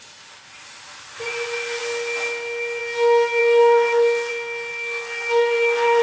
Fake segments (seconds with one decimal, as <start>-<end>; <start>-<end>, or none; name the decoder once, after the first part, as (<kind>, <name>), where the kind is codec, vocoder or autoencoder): 3.4-4.3 (codec, SNAC); 4.7-6.0